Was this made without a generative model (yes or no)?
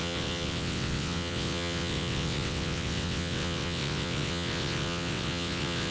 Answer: no